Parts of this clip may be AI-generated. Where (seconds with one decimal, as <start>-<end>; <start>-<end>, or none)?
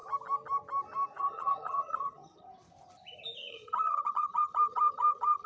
1.2-2.5; 3.5-5.5